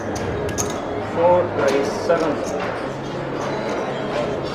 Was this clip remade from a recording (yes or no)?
no